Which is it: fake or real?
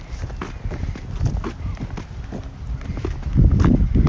real